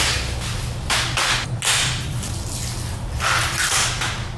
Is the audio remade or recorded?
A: recorded